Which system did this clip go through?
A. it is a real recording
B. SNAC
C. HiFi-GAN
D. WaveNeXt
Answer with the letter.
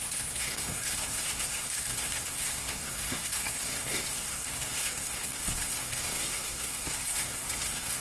B